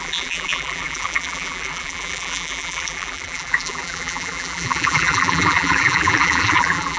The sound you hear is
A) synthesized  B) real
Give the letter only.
A